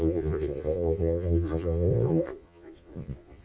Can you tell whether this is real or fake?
fake